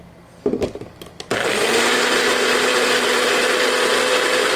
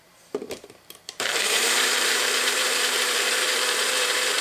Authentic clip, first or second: first